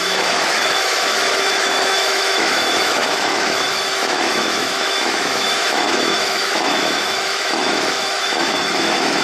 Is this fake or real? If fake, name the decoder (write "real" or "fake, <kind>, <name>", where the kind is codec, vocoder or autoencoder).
fake, autoencoder, DAC-VAE